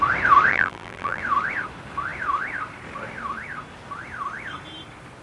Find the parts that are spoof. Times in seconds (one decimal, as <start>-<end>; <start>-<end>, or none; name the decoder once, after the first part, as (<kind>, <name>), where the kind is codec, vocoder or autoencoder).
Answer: 0.5-1.2 (vocoder, BigVGAN v2)